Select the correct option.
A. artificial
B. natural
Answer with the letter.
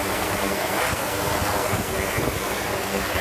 A